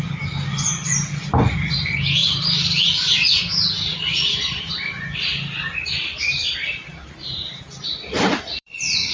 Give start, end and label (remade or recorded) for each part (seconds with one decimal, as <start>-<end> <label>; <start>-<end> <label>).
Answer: 0.0-2.2 remade; 2.2-5.7 recorded; 5.7-9.1 remade